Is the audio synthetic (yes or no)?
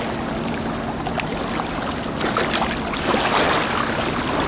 no